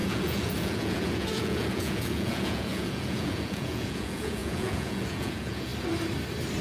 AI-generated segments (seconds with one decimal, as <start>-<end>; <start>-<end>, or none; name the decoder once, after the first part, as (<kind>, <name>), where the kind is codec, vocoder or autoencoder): 0.0-5.7 (vocoder, Vocos)